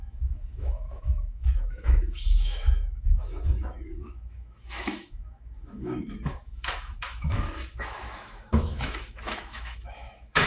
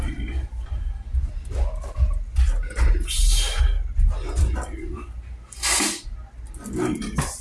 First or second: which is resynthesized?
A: first